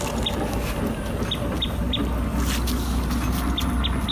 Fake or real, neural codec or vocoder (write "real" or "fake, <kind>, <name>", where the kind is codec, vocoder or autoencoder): real